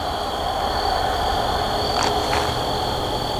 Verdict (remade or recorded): recorded